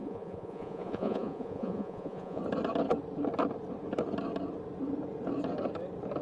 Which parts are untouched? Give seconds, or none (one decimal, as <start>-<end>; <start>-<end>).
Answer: 2.4-6.2